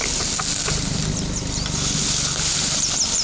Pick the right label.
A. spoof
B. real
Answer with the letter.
B